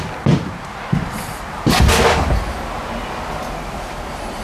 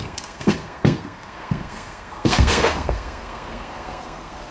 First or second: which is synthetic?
second